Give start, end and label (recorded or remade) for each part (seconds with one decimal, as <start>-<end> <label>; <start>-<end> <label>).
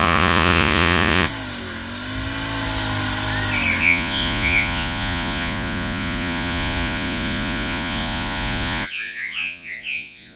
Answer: 0.0-1.3 remade; 1.3-3.8 recorded; 3.8-10.4 remade